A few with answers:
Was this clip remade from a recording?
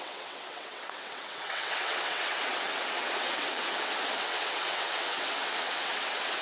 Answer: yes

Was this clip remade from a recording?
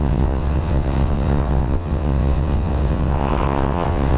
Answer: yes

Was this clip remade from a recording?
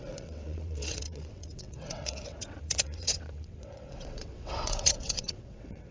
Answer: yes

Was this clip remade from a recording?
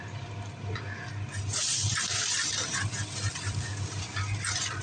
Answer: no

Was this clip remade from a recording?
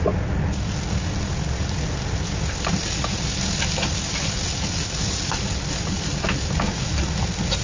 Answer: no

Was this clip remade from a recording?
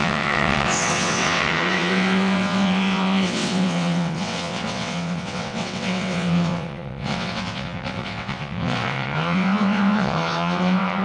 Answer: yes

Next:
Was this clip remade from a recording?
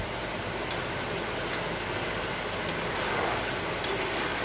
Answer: no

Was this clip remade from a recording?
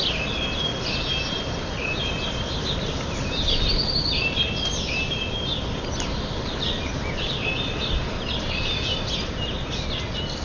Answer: no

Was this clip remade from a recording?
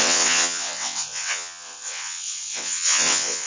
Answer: yes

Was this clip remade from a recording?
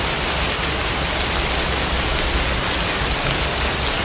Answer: no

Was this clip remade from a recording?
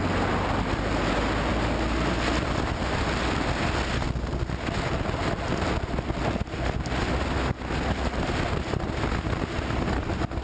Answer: no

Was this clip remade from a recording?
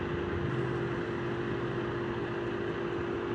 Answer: no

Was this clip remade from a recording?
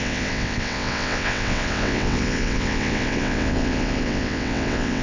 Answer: yes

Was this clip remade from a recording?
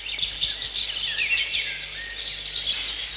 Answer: no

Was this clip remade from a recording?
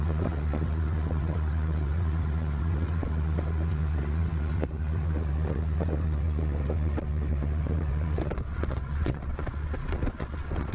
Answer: yes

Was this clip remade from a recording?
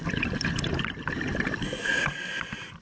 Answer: no